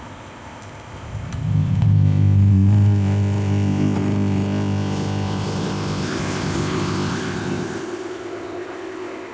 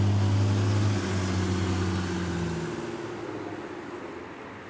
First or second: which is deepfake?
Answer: first